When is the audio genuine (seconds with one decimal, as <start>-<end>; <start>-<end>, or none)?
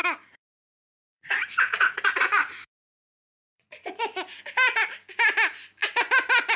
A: 4.0-6.6